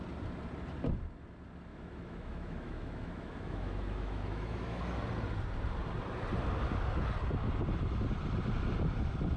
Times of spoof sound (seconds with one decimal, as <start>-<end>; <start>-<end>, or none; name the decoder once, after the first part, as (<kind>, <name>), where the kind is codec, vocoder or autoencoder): 1.7-4.8 (autoencoder, DAC-VAE)